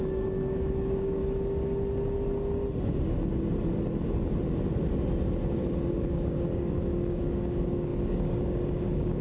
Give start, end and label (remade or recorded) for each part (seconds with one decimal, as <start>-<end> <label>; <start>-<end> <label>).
0.0-1.2 remade; 1.2-5.5 recorded; 5.5-9.2 remade